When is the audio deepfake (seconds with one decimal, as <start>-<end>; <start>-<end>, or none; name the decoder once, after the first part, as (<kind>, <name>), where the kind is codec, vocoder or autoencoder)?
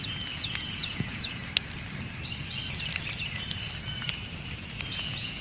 0.0-1.4 (vocoder, Vocos); 4.6-5.4